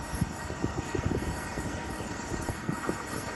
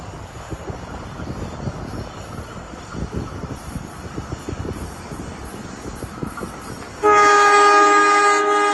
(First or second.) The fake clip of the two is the first